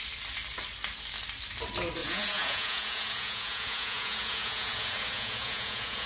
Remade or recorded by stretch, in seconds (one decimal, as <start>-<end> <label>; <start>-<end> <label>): 0.0-2.0 recorded; 2.0-6.1 remade